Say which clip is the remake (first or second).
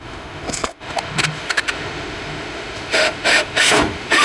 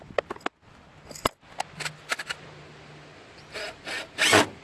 first